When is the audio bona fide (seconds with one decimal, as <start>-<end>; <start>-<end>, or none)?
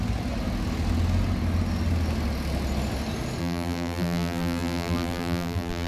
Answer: 0.0-3.4